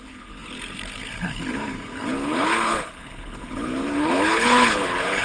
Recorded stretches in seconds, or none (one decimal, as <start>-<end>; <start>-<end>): none